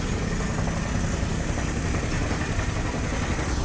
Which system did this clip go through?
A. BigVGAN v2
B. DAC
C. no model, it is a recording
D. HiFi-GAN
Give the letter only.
C